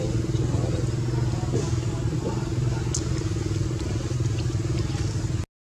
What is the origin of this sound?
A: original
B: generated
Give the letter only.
A